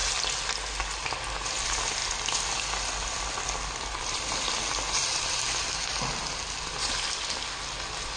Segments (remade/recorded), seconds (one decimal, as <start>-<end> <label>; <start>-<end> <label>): 0.0-8.2 recorded